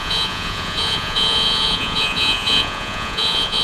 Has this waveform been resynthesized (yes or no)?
yes